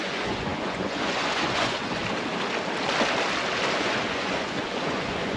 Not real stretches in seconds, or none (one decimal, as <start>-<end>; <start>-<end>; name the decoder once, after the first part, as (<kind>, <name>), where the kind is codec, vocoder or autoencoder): 0.0-2.0 (vocoder, Vocos); 3.7-5.4